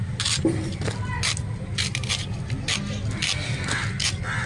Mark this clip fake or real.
real